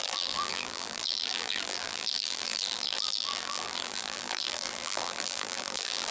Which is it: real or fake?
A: fake